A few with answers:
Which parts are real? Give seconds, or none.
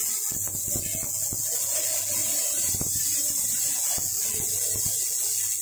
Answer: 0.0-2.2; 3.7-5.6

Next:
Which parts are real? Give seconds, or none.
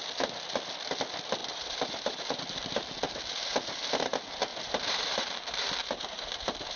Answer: 0.0-1.4; 2.4-4.5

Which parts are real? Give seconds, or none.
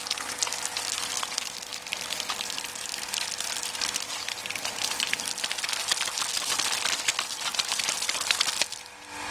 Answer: 0.0-1.7; 3.1-7.1; 7.7-9.3